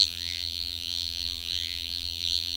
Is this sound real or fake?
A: fake